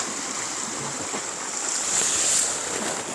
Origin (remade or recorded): recorded